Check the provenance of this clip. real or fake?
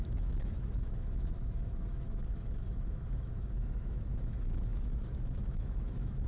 fake